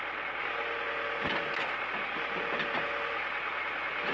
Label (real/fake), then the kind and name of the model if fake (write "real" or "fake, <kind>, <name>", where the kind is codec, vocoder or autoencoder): real